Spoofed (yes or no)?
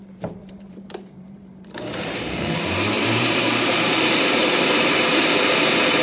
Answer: yes